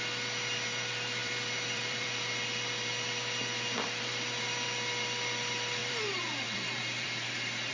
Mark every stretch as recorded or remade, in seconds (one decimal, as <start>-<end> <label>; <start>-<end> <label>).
0.0-1.2 recorded; 1.2-2.1 remade; 2.1-5.8 recorded; 5.8-7.7 remade